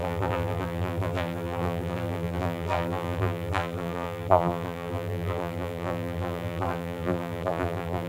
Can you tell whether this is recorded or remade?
remade